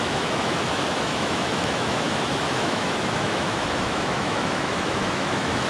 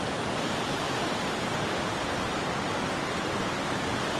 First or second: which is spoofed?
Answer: first